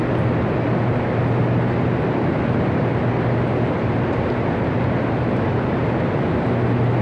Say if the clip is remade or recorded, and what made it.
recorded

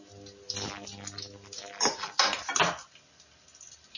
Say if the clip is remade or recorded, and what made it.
recorded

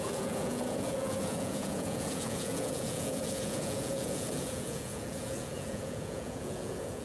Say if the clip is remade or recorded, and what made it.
remade, vocoder, Vocos